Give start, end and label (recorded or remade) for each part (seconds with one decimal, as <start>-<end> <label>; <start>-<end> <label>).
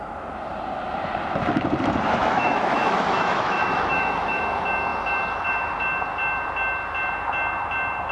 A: 0.0-2.2 recorded; 2.2-4.4 remade; 4.4-8.1 recorded